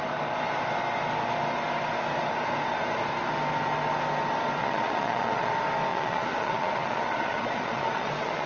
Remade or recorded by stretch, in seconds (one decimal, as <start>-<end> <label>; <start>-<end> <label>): 0.0-4.6 recorded; 4.6-5.5 remade; 5.5-5.9 recorded; 5.9-8.5 remade